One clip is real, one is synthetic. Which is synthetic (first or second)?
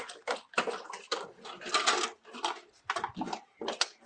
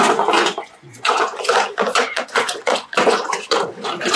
second